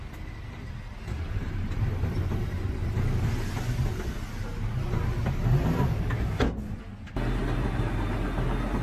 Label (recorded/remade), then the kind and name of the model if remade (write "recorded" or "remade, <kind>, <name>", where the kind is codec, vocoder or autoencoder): recorded